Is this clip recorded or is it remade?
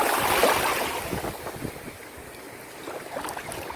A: recorded